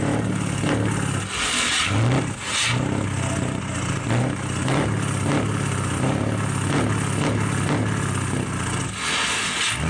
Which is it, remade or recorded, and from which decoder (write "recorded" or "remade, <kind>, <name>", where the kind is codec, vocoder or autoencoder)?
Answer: recorded